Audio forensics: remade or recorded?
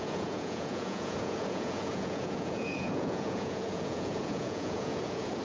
remade